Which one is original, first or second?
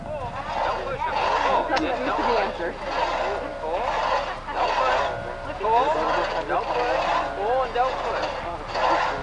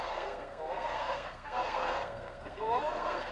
first